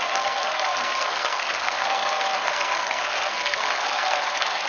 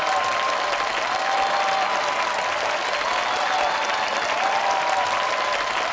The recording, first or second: second